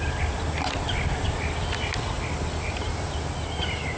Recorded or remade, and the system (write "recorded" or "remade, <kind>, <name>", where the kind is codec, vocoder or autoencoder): recorded